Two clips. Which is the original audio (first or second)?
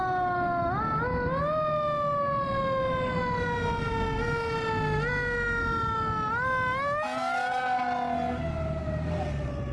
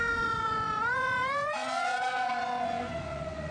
first